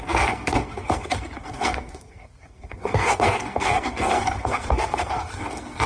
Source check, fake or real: fake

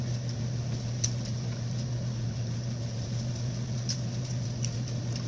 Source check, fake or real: real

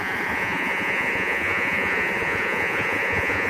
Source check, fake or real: fake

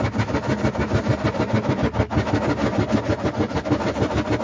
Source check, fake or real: real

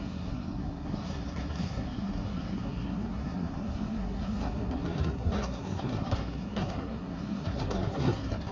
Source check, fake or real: fake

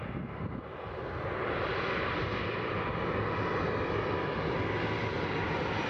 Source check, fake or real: real